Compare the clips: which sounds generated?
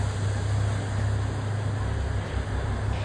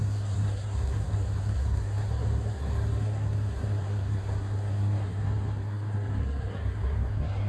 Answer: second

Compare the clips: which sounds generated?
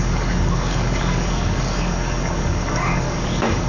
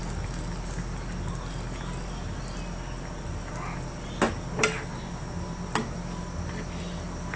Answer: first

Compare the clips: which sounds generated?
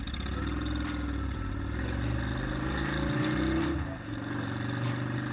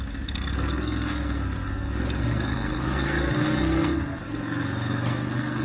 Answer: second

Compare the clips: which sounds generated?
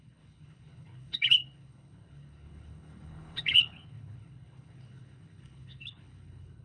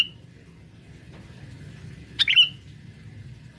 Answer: first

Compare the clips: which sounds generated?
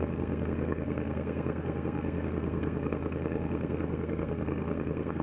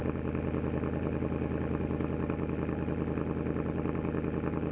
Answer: first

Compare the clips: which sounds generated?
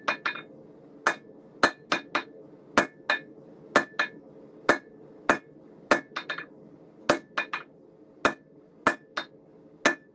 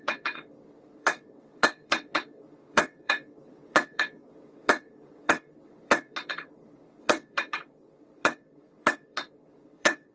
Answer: second